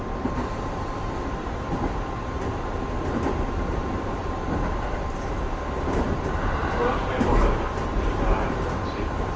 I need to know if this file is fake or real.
fake